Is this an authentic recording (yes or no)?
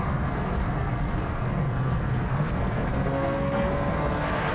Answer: no